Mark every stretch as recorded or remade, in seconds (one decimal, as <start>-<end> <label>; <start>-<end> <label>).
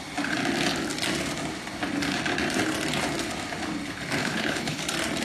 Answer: 0.0-4.2 recorded; 4.2-4.8 remade; 4.8-5.2 recorded